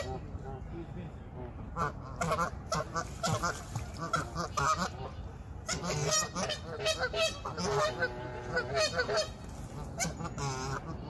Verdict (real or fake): real